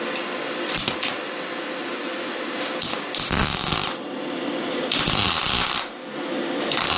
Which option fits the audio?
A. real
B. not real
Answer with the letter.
A